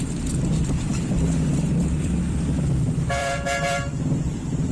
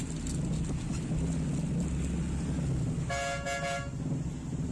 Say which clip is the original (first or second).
second